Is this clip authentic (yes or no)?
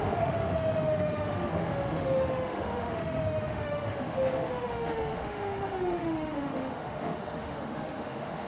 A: no